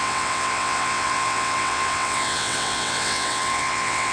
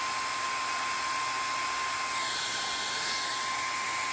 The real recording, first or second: second